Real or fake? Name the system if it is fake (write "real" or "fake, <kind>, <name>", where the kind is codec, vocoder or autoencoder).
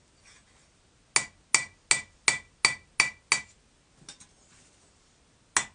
real